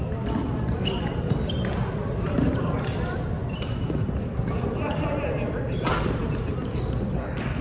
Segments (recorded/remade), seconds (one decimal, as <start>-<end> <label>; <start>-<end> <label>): 0.0-7.6 recorded